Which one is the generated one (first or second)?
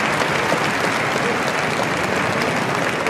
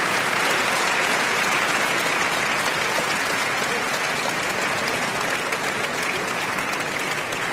second